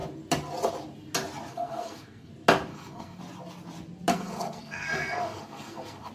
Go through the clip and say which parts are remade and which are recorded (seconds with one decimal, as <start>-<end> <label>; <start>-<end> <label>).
0.0-1.5 recorded; 1.5-2.3 remade; 2.3-2.7 recorded; 2.7-3.2 remade; 3.2-4.1 recorded; 4.1-6.1 remade